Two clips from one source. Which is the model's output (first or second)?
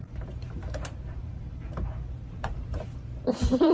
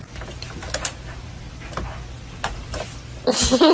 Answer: first